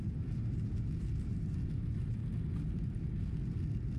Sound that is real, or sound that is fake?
real